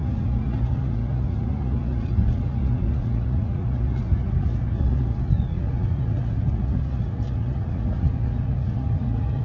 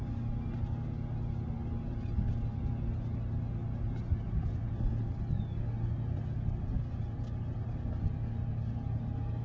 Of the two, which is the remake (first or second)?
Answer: first